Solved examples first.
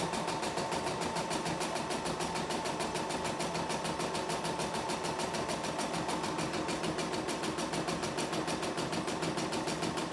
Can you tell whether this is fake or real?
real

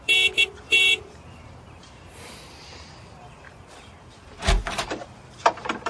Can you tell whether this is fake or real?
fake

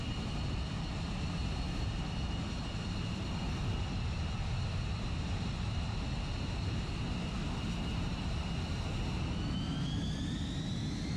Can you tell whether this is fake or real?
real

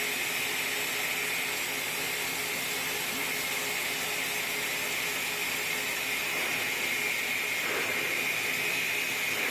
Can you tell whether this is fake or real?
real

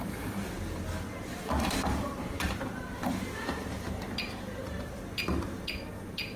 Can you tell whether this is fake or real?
fake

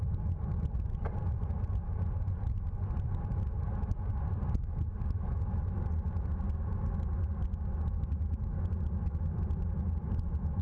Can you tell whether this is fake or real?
real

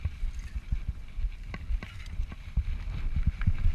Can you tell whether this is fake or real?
real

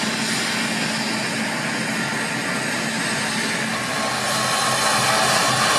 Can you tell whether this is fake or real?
real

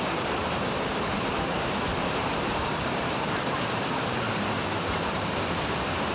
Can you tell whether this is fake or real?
fake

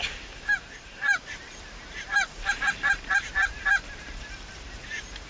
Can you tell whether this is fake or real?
fake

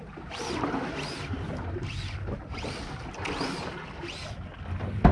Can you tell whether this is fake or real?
real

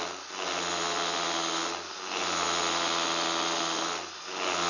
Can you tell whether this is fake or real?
real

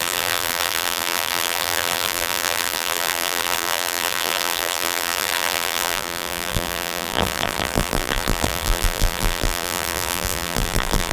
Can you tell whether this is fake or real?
fake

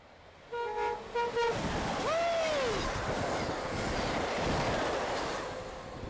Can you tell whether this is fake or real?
real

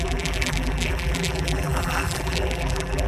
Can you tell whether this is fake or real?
fake